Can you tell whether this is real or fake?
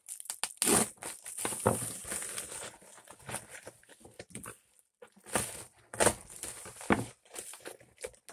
real